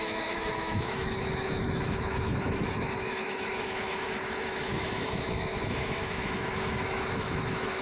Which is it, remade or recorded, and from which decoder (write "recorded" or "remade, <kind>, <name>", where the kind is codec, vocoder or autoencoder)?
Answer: remade, autoencoder, DAC-VAE